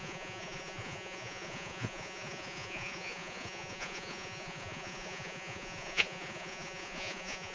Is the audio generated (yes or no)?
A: yes